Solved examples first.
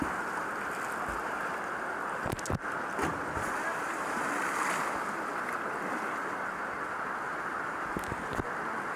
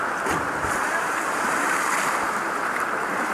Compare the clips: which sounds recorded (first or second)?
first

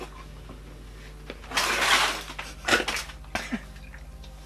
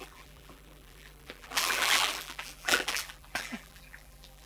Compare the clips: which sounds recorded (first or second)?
first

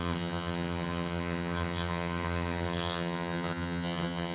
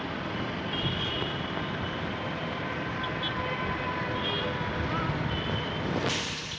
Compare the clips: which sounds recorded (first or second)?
second